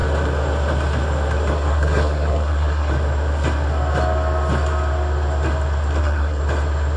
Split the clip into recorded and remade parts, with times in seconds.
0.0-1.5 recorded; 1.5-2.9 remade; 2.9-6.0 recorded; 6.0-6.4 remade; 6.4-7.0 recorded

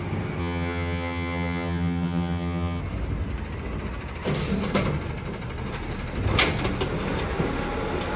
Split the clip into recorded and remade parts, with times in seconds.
0.0-0.4 recorded; 0.4-2.8 remade; 2.8-8.2 recorded

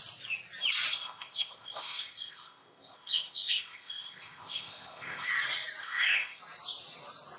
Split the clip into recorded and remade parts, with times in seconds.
0.0-0.9 recorded; 0.9-5.3 remade; 5.3-5.8 recorded; 5.8-6.4 remade; 6.4-7.4 recorded

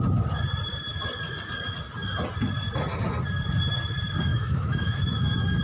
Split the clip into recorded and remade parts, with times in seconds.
0.0-4.3 recorded; 4.3-5.6 remade

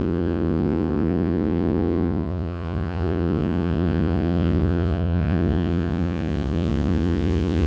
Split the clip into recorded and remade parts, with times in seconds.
0.0-7.7 remade